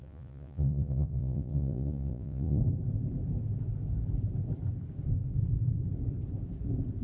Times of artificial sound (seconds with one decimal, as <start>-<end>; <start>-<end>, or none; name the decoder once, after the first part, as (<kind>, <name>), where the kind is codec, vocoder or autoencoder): 0.0-2.6 (vocoder, Vocos)